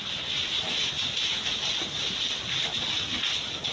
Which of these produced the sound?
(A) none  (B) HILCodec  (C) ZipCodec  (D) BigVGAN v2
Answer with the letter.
A